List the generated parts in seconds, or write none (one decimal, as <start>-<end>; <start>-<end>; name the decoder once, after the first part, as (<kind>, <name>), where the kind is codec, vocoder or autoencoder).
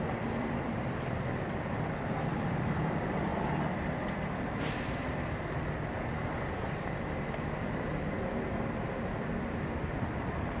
0.0-3.3 (vocoder, BigVGAN v2); 7.7-10.6